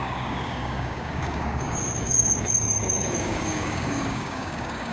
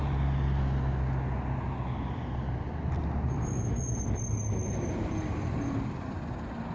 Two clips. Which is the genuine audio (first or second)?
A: second